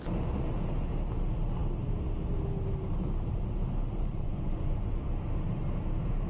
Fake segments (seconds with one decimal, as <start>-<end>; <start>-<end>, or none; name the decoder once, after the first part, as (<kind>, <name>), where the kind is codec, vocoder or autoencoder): 4.1-4.9 (vocoder, Vocos)